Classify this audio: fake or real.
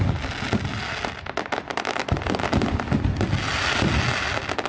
real